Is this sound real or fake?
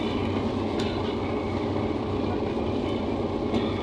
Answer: real